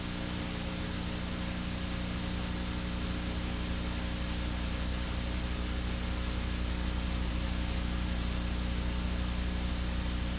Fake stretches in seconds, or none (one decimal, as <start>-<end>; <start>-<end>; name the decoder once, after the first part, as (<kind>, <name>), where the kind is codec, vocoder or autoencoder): none